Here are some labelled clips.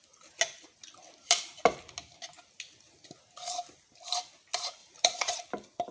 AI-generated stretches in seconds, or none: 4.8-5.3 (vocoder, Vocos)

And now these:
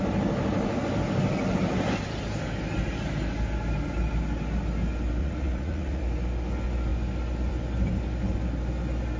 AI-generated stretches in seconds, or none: 5.2-6.0 (vocoder, Vocos)

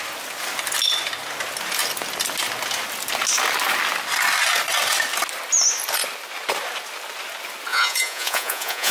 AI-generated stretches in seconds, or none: 7.7-8.9 (vocoder, Vocos)

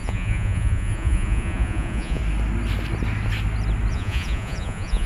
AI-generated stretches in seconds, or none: 0.0-2.2 (vocoder, Vocos); 3.9-5.1

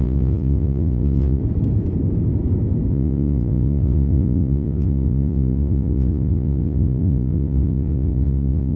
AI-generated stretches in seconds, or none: 0.0-1.4 (vocoder, Vocos); 2.9-8.8

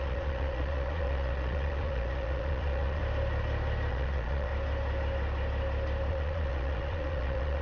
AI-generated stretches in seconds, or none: 0.0-3.0 (vocoder, Vocos); 3.9-4.5; 6.1-7.6

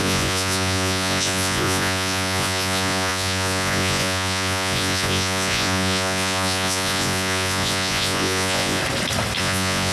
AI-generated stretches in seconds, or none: 0.0-8.8 (vocoder, Vocos); 9.4-9.9